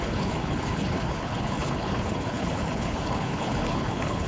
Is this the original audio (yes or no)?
no